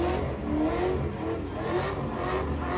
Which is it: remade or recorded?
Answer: recorded